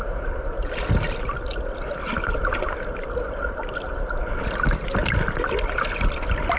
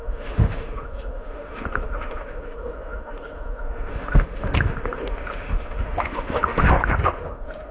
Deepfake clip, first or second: second